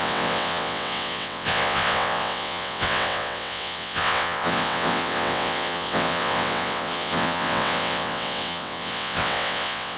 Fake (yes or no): yes